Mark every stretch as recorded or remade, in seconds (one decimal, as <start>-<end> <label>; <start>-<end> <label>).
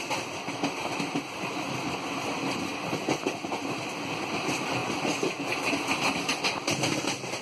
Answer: 0.0-7.4 recorded